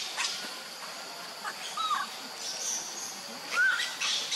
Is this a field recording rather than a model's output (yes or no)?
yes